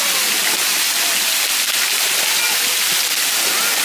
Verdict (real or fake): real